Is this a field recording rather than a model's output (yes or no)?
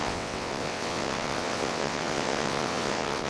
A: no